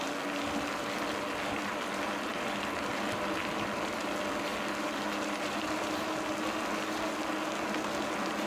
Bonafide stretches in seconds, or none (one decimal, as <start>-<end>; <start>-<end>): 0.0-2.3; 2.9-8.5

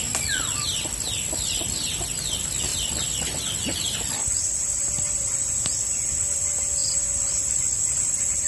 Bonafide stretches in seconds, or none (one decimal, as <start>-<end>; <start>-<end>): none

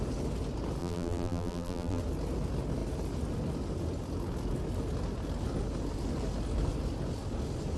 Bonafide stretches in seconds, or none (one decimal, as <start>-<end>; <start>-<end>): 0.0-0.8; 2.0-7.8

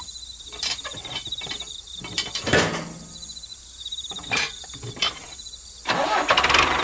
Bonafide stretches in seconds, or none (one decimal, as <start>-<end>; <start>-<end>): 0.0-1.0; 1.5-3.5; 5.3-6.8

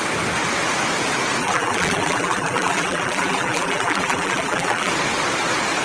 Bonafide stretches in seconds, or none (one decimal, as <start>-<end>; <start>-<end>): 0.0-1.4; 4.9-5.8

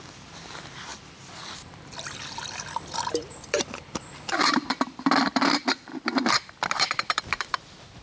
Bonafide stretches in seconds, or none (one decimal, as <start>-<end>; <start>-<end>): 5.9-6.5

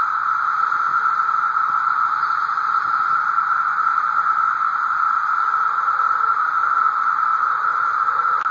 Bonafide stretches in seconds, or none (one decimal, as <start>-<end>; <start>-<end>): 0.0-4.7; 5.3-7.3; 8.1-8.5

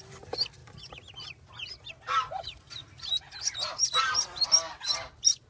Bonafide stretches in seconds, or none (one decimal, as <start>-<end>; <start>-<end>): 0.0-5.5